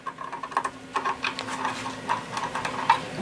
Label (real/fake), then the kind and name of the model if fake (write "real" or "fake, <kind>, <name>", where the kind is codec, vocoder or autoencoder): real